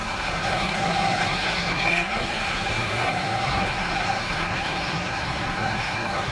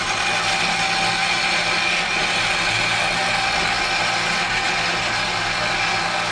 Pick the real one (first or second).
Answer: second